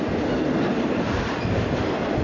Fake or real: real